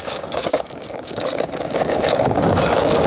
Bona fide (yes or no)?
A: no